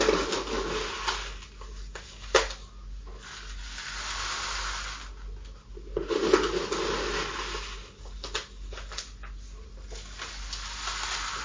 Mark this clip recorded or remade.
recorded